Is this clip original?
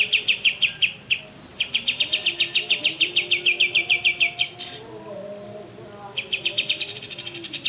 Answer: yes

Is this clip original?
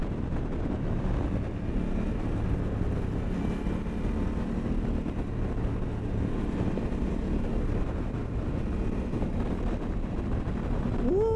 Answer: yes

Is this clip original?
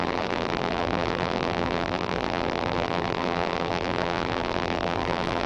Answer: no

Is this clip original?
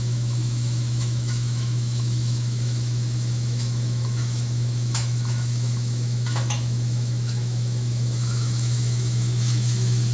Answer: no